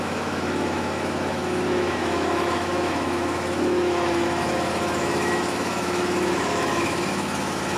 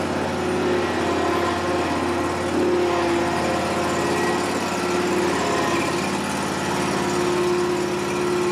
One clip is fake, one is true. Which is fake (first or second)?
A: first